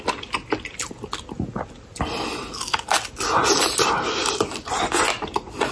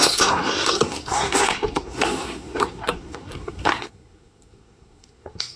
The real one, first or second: first